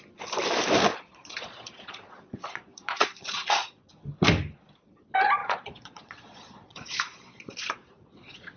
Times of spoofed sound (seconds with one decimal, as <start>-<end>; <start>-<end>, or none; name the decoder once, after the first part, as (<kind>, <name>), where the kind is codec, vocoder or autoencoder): 0.9-3.9 (vocoder, Vocos); 5.4-8.6